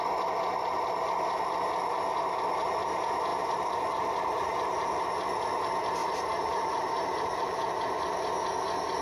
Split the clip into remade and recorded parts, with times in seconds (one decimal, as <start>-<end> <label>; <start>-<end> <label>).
0.0-3.3 recorded; 3.3-5.0 remade; 5.0-6.0 recorded; 6.0-7.7 remade; 7.7-9.0 recorded